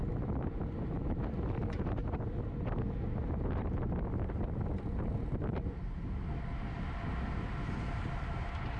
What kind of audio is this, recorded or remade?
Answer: recorded